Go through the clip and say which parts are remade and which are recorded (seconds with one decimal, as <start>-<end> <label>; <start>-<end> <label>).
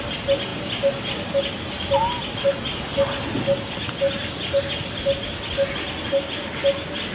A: 0.0-7.1 recorded